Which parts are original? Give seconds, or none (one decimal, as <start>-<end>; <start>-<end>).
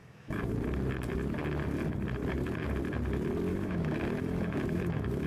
0.5-3.5